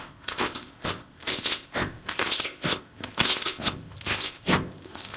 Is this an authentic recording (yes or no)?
no